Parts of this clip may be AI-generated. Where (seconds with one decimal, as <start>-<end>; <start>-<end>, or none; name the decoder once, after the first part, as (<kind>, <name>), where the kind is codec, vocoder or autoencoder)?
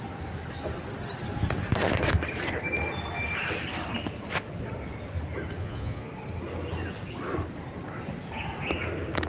5.6-6.1 (vocoder, Vocos)